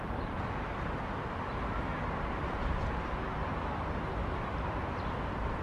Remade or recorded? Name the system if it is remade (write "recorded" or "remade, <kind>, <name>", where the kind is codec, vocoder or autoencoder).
recorded